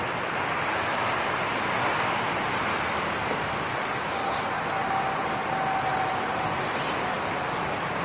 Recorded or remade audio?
recorded